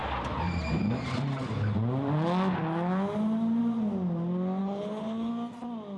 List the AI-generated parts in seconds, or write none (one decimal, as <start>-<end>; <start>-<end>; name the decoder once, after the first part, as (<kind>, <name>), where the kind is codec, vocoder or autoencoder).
4.6-5.3 (codec, HILCodec)